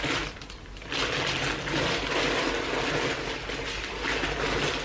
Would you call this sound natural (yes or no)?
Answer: yes